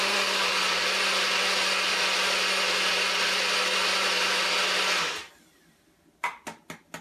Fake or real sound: real